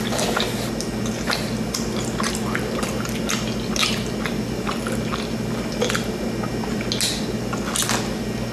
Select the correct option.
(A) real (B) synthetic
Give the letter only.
A